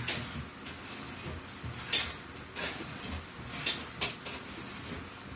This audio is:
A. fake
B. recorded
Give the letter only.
B